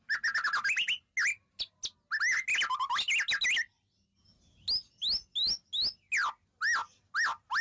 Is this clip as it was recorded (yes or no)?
yes